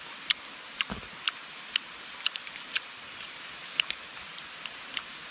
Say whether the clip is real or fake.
real